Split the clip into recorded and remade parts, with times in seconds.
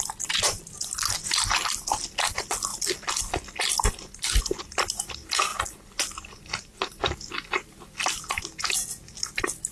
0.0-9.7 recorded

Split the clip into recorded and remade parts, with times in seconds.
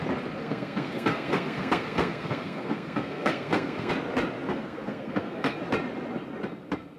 0.0-0.4 recorded; 0.4-3.9 remade; 3.9-4.5 recorded; 4.5-5.6 remade; 5.6-7.0 recorded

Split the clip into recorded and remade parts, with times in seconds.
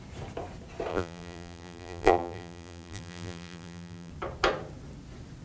0.0-0.9 recorded; 0.9-4.1 remade; 4.1-5.4 recorded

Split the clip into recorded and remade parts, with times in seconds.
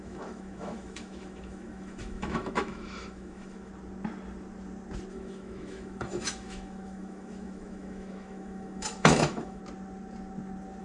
0.0-3.7 remade; 3.7-5.1 recorded; 5.1-9.6 remade; 9.6-10.8 recorded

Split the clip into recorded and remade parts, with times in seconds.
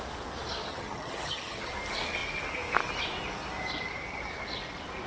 0.0-0.7 recorded; 0.7-1.7 remade; 1.7-5.1 recorded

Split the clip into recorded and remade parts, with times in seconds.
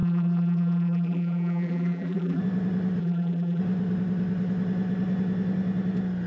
0.0-2.4 remade; 2.4-3.0 recorded; 3.0-3.6 remade; 3.6-6.3 recorded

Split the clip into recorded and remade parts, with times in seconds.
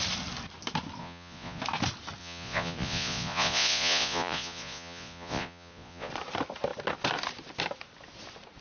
0.0-1.0 recorded; 1.0-1.6 remade; 1.6-2.2 recorded; 2.2-6.1 remade; 6.1-8.6 recorded